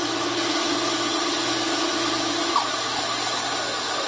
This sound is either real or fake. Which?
real